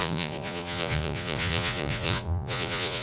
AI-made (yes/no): yes